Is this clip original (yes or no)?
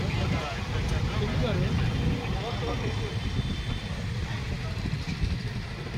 yes